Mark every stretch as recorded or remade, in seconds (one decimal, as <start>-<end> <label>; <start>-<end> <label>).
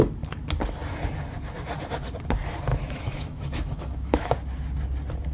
0.0-2.7 recorded; 2.7-4.3 remade; 4.3-5.3 recorded